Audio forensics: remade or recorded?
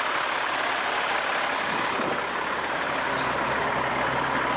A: recorded